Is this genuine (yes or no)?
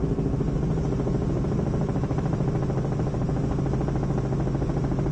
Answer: yes